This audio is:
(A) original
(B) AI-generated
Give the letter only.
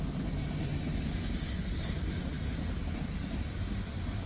A